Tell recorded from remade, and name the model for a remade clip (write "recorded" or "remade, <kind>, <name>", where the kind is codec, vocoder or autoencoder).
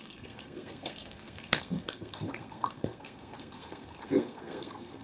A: remade, codec, SNAC